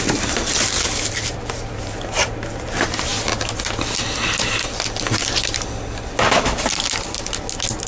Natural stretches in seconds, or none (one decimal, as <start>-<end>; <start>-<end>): 3.1-7.9